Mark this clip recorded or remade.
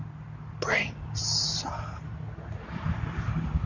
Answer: recorded